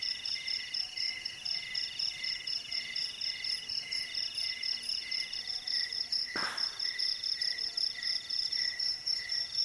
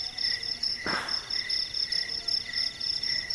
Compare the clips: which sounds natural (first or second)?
second